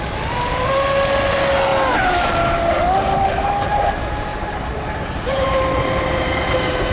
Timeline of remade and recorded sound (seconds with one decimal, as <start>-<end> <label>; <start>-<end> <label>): 0.0-4.3 recorded; 4.3-6.9 remade